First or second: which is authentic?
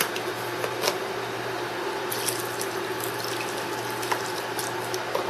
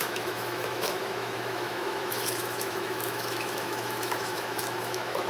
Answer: first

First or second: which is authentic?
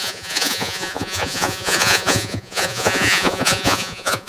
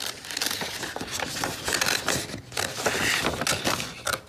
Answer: second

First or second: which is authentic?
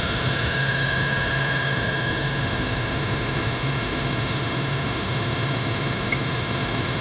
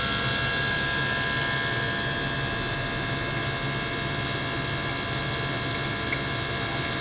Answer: second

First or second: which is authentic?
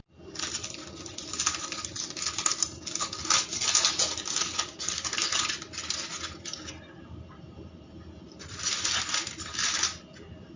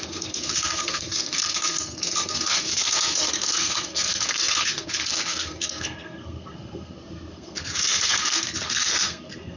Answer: first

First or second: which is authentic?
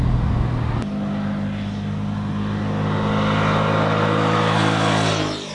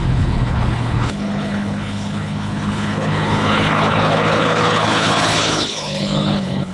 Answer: first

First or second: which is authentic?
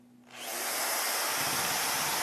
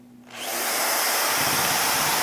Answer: first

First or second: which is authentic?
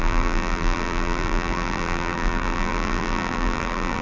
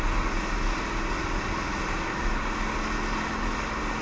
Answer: second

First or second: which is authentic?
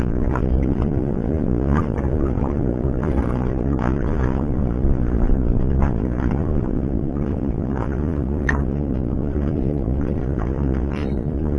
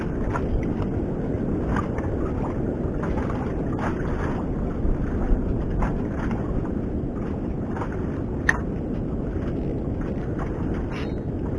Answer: second